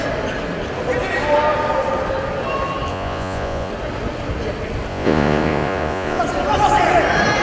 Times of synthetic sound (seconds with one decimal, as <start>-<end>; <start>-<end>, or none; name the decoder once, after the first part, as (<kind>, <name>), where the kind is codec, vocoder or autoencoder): 2.9-3.7 (vocoder, Vocos); 4.9-6.2